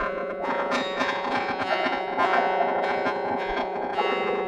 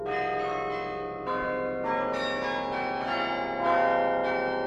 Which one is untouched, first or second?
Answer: second